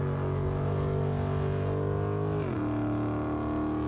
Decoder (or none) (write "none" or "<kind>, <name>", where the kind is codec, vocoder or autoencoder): none